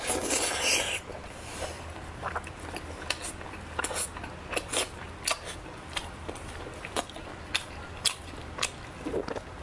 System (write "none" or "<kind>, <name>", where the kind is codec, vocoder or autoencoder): none